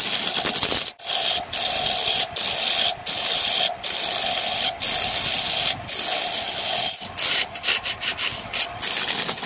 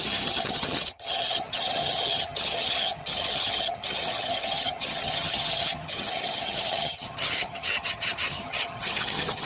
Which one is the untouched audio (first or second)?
first